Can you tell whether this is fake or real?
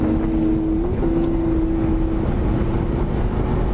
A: real